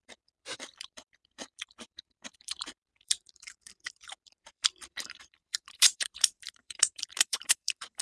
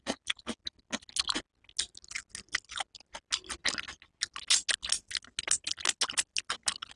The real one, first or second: second